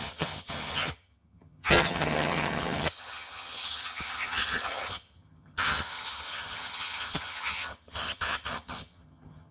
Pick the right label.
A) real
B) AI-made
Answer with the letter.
B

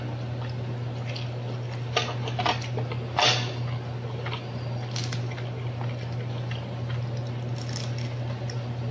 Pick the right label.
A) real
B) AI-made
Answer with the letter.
A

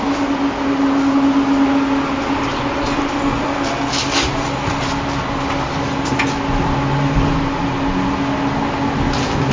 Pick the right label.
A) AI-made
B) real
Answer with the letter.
B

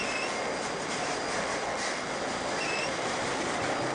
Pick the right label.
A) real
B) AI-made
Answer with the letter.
A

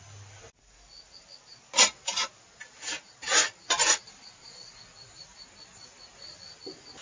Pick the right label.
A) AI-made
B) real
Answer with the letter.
B